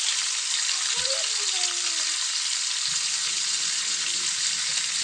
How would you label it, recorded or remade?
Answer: remade